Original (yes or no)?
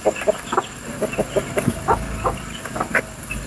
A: yes